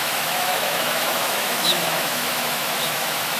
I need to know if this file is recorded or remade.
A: remade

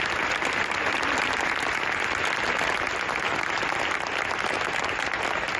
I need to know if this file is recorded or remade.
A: recorded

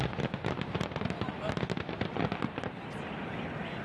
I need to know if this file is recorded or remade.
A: recorded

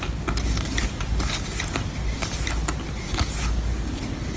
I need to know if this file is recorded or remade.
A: recorded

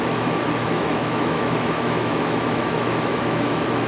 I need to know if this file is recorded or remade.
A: remade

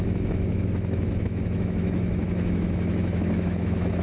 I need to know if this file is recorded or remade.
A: remade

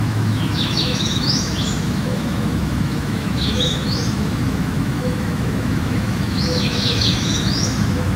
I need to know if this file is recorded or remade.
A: remade